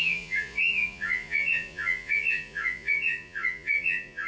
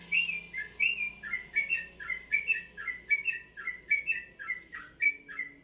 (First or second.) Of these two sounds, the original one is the second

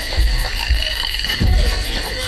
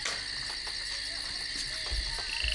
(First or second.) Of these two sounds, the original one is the second